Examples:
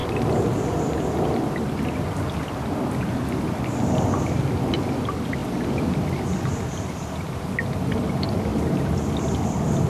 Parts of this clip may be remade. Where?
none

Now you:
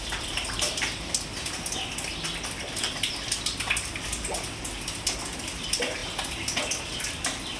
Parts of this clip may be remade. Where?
6.0-6.6 (vocoder, BigVGAN v2)

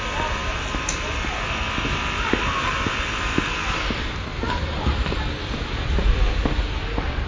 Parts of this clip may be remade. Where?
4.3-5.6 (vocoder, BigVGAN v2)

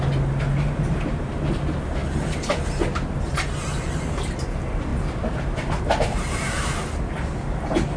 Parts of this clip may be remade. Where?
none

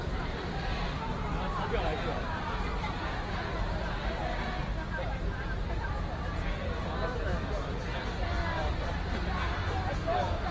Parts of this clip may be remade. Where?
0.0-1.1 (vocoder, BigVGAN v2)

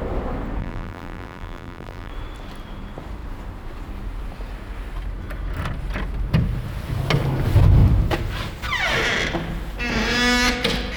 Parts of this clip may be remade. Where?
0.6-2.1 (vocoder, BigVGAN v2)

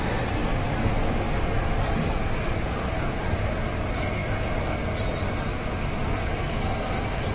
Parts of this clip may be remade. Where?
none

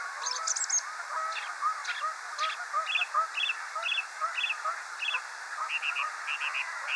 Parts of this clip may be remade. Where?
none